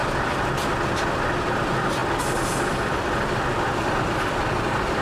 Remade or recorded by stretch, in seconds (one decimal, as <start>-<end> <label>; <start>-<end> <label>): 0.0-5.0 recorded